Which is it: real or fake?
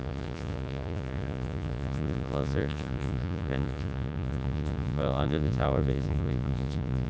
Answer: fake